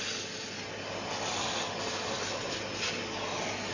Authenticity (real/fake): real